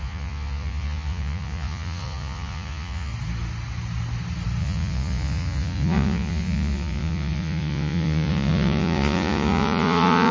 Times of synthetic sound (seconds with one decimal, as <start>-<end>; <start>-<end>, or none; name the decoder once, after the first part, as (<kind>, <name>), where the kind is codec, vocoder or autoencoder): 0.0-3.1 (vocoder, Vocos); 4.6-10.3